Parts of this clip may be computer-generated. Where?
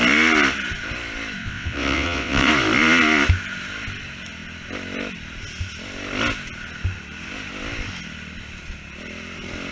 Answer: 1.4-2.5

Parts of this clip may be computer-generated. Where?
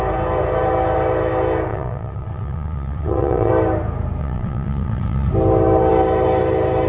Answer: 1.7-3.5; 4.2-5.3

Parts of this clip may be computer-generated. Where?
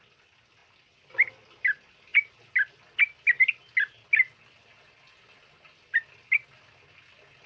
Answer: none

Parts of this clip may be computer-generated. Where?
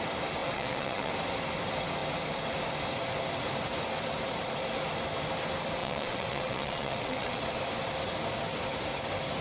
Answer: 0.4-1.1; 5.8-7.4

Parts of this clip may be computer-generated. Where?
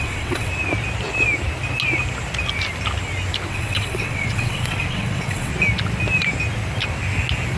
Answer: 0.0-0.5; 3.5-5.5